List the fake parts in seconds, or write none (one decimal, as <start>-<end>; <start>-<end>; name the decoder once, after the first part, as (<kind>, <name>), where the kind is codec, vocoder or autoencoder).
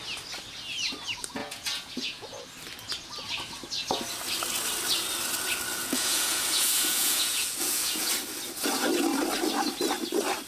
1.4-2.4 (vocoder, Vocos); 5.7-8.1